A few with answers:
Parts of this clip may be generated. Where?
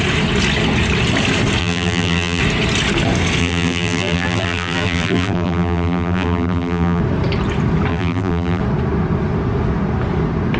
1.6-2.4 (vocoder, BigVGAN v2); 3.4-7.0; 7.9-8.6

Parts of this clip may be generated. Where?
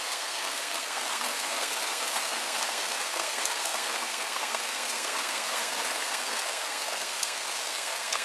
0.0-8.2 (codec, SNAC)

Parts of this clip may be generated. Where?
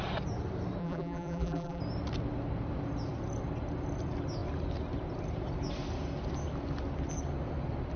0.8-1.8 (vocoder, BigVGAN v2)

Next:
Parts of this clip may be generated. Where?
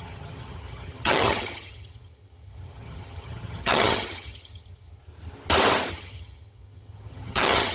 0.0-5.0 (vocoder, HiFi-GAN); 5.9-7.7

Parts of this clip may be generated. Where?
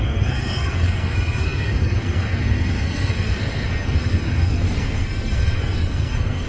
0.0-6.5 (codec, SNAC)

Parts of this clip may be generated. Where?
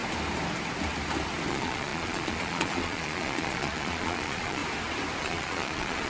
1.5-4.6 (vocoder, Vocos); 5.2-6.1